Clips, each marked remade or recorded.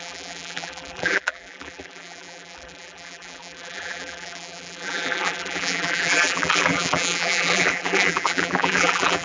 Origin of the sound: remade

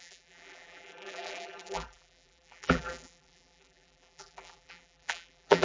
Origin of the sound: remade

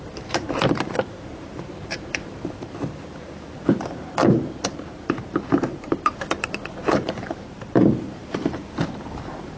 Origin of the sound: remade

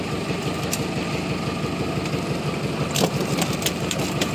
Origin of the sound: recorded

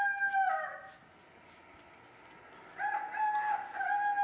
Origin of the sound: recorded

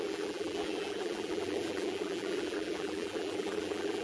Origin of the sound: remade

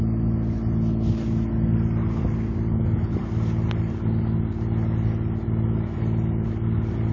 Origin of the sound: recorded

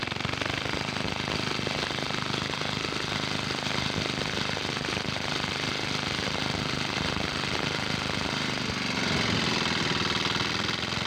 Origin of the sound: recorded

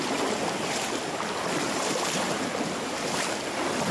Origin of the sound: recorded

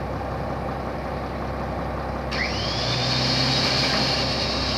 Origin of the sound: remade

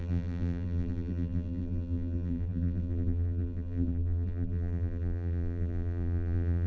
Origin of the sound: remade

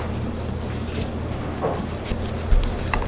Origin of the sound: recorded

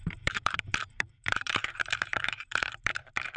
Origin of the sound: remade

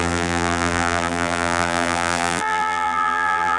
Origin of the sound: remade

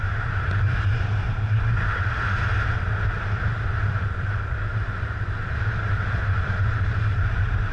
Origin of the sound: remade